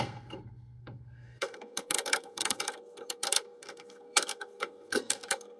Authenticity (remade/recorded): remade